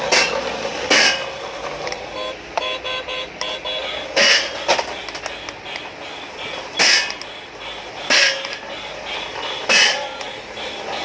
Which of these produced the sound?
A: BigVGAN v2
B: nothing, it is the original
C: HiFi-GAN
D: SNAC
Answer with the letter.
B